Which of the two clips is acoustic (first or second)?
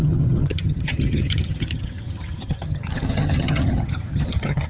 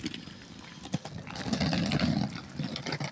second